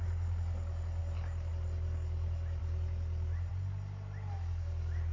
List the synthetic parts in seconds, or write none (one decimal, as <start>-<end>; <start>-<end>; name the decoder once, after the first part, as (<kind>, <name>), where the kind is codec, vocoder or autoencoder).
none